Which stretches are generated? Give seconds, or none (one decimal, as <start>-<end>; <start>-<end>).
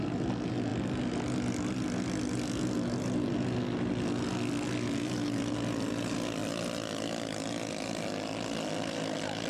none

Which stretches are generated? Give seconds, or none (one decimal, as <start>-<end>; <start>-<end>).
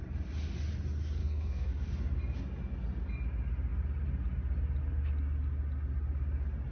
1.2-1.7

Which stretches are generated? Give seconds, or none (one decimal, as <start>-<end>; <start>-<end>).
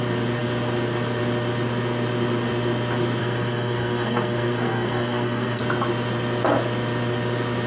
3.2-5.6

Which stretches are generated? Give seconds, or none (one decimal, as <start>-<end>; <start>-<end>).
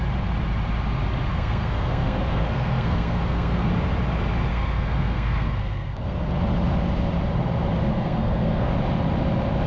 1.3-3.7; 4.5-6.3; 7.9-8.7